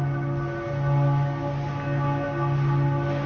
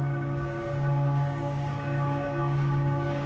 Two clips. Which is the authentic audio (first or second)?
first